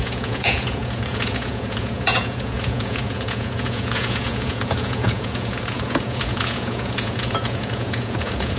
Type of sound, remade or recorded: remade